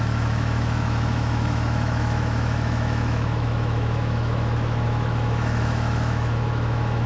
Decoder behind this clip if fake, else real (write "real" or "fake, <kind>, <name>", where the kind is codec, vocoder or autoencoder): fake, autoencoder, DAC-VAE